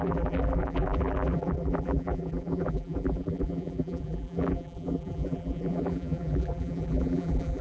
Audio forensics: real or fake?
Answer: fake